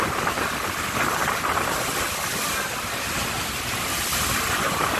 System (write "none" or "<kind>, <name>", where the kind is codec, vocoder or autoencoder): none